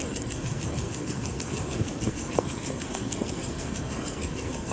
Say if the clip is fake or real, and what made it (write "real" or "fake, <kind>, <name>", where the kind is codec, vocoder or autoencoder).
fake, codec, SNAC